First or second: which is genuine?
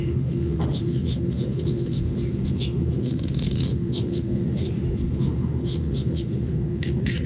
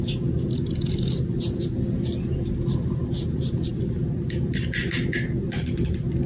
second